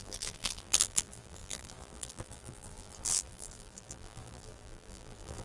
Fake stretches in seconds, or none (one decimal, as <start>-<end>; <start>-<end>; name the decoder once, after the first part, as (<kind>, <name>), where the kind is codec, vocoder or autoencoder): 0.0-5.4 (vocoder, BigVGAN v2)